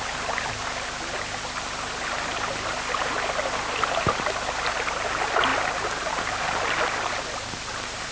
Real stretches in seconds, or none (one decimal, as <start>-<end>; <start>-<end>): 0.0-8.1